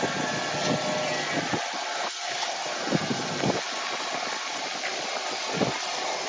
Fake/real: real